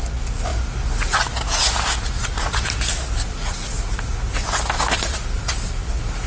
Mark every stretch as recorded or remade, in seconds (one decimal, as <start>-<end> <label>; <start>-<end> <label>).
0.0-6.3 recorded

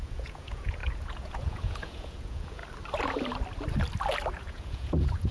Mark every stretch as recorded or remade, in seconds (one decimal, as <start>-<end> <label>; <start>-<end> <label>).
0.0-2.6 remade; 2.6-4.3 recorded; 4.3-5.3 remade

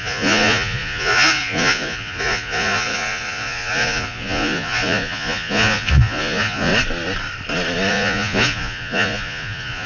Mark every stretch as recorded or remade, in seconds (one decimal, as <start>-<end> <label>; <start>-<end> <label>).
0.0-6.7 remade; 6.7-7.9 recorded; 7.9-9.9 remade

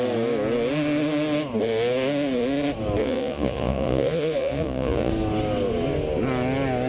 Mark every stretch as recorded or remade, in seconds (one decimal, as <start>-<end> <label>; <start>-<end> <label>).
0.0-3.0 recorded; 3.0-5.1 remade; 5.1-6.9 recorded

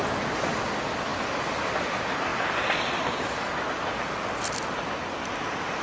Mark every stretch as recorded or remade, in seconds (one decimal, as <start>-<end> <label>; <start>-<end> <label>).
0.0-5.8 recorded

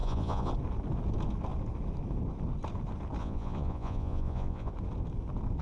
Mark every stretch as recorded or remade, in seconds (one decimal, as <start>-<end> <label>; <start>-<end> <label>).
0.0-0.5 remade; 0.5-3.2 recorded; 3.2-4.7 remade; 4.7-5.6 recorded